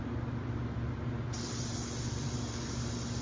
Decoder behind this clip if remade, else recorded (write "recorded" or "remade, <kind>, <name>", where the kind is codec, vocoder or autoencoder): recorded